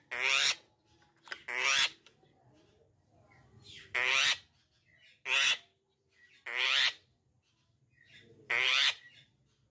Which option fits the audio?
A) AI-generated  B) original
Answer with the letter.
B